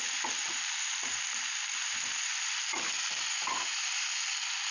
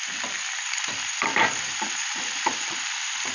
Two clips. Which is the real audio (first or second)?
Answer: first